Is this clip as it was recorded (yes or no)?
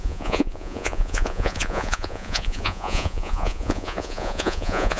no